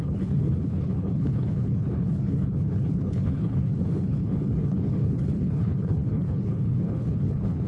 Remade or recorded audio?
remade